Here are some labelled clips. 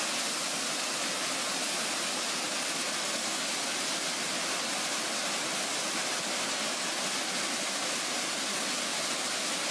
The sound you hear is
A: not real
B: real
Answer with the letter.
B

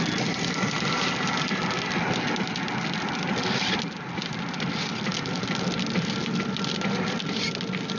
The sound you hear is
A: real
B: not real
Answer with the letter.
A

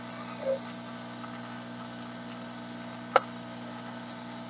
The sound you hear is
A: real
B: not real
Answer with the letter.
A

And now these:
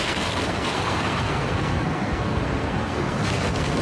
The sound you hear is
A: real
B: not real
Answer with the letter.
B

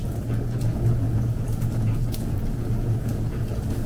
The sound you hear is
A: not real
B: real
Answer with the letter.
A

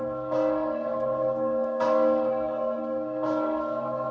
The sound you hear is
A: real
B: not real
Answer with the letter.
B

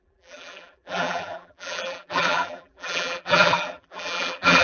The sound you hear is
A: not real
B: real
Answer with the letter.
A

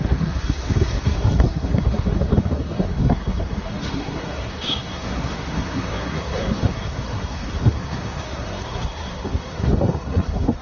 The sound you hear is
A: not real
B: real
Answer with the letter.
A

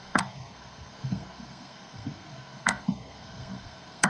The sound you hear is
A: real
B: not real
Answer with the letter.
B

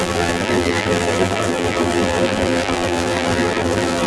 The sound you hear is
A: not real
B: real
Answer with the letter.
A